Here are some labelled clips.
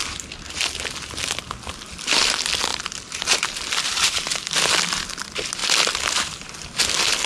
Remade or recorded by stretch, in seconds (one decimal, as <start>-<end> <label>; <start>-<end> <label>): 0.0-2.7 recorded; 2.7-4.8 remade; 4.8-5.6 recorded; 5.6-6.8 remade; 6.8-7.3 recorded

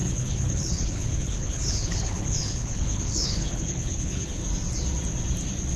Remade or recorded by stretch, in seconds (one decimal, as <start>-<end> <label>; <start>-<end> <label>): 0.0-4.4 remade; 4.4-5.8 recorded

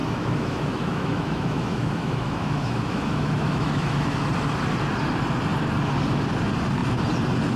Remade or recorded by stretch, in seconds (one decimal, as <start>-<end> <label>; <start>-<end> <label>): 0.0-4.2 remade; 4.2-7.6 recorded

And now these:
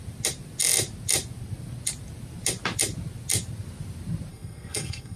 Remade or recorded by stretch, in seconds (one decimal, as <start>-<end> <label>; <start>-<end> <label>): 0.0-4.3 recorded; 4.3-5.2 remade

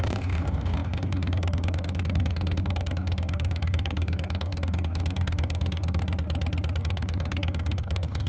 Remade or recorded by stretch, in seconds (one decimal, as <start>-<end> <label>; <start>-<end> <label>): 0.0-6.0 remade; 6.0-6.8 recorded; 6.8-8.3 remade